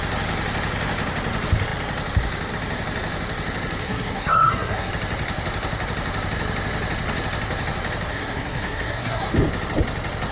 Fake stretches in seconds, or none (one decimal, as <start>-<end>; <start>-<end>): 3.8-4.9; 8.1-9.3